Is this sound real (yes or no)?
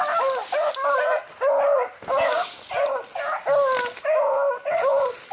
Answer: yes